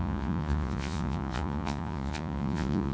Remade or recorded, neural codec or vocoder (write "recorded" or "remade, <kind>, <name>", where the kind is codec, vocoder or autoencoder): remade, vocoder, Vocos